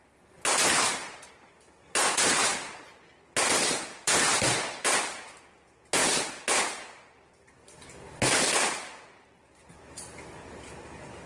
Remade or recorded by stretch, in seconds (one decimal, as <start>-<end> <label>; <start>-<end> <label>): 0.0-11.3 recorded